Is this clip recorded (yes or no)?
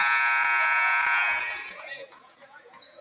no